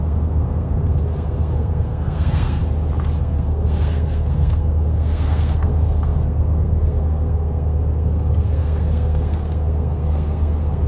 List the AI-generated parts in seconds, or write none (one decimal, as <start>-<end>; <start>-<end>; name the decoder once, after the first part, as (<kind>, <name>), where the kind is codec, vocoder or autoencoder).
0.0-2.6 (codec, SNAC); 3.2-10.9